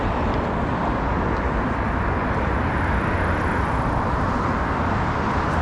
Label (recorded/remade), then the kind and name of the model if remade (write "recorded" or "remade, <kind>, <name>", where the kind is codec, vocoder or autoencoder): recorded